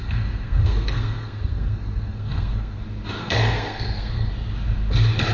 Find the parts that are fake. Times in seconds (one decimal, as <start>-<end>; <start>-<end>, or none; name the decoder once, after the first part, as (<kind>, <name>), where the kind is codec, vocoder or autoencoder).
0.0-2.8 (codec, SNAC); 3.2-4.3